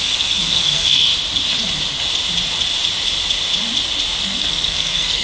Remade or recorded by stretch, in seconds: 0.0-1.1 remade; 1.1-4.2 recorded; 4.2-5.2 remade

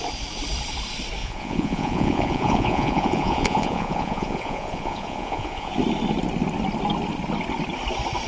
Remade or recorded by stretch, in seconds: 0.0-1.2 recorded; 1.2-5.7 remade; 5.7-8.3 recorded

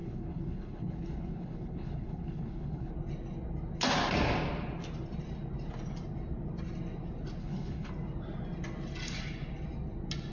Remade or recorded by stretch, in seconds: 0.0-2.9 remade; 2.9-7.4 recorded; 7.4-7.9 remade; 7.9-10.3 recorded

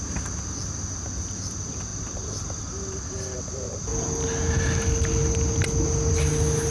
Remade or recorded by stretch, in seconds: 0.0-6.7 recorded

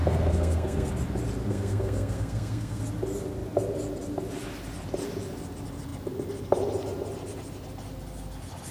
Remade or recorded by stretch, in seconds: 0.0-0.9 remade; 0.9-1.4 recorded; 1.4-2.8 remade; 2.8-8.7 recorded

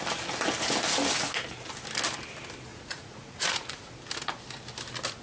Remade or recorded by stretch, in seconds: 0.0-2.7 recorded; 2.7-3.9 remade; 3.9-5.2 recorded

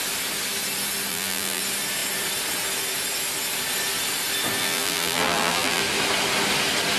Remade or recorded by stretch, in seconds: 0.0-1.1 recorded; 1.1-1.6 remade; 1.6-4.6 recorded; 4.6-5.8 remade; 5.8-7.0 recorded